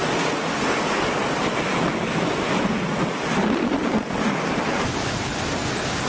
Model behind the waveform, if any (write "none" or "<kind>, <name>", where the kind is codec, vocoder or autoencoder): none